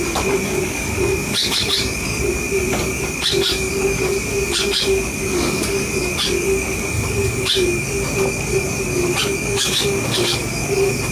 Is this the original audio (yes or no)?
no